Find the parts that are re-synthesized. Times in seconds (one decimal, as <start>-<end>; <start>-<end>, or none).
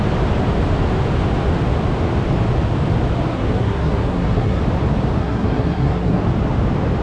3.3-4.6; 5.2-6.2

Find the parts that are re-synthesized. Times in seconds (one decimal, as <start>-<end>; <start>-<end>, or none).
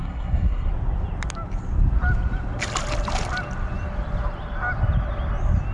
0.0-0.7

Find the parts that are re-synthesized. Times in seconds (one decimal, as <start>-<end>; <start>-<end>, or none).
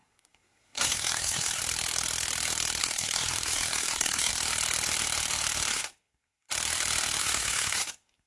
0.0-1.6; 2.8-4.3; 5.7-6.5; 7.2-8.3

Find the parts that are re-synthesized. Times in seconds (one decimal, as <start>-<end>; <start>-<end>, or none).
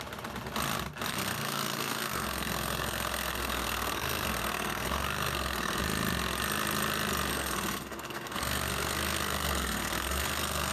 1.1-5.8; 7.3-10.7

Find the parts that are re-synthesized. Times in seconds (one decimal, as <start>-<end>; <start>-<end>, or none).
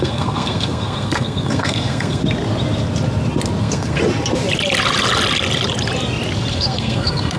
0.0-2.2; 3.6-4.0; 6.5-7.4